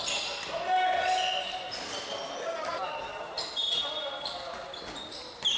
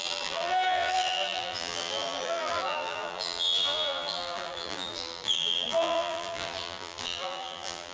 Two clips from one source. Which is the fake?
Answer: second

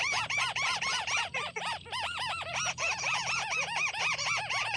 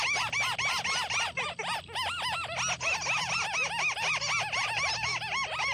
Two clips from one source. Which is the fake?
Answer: first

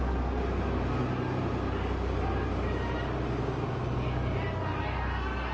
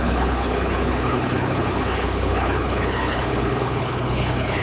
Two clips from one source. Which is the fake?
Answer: second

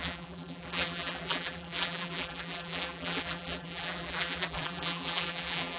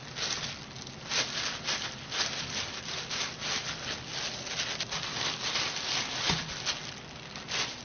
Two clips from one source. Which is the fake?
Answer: first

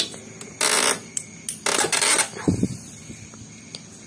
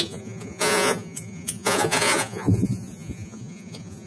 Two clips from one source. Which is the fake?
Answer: second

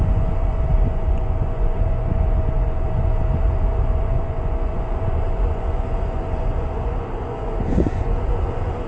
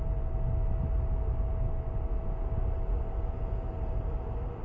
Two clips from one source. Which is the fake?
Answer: first